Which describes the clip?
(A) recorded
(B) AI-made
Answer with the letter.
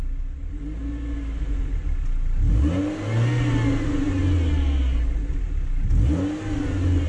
A